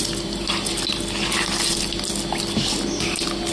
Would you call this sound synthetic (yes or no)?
no